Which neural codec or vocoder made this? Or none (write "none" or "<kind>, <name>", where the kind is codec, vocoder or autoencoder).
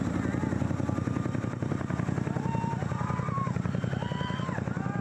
vocoder, BigVGAN v2